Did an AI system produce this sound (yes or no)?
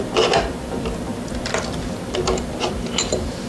yes